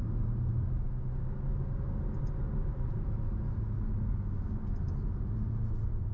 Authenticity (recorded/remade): recorded